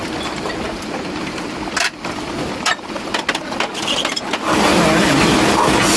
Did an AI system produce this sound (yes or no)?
no